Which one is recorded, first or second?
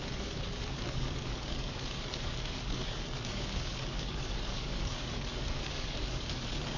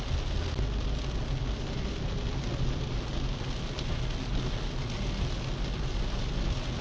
second